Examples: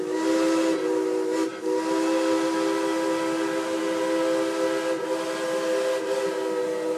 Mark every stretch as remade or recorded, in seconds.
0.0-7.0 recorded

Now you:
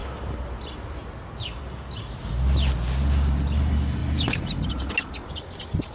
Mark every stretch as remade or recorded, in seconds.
0.0-4.0 recorded; 4.0-4.9 remade; 4.9-5.9 recorded

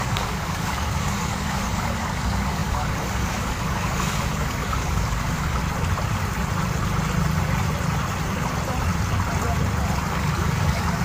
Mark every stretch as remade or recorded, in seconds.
0.0-5.6 remade; 5.6-10.1 recorded; 10.1-11.0 remade

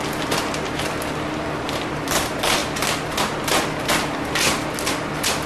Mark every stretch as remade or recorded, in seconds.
0.0-5.5 recorded